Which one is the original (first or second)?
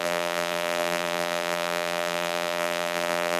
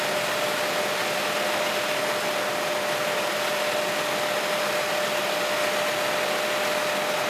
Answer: second